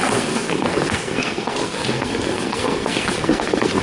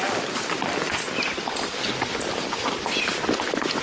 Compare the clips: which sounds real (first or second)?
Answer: second